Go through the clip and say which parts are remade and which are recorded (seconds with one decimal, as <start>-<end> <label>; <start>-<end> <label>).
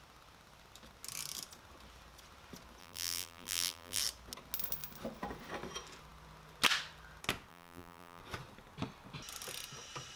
0.0-2.8 recorded; 2.8-4.0 remade; 4.0-7.5 recorded; 7.5-8.2 remade; 8.2-10.2 recorded